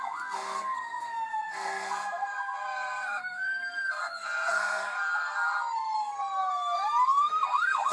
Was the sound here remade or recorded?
remade